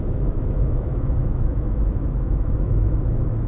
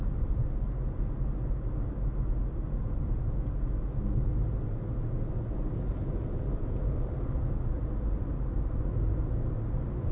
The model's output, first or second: first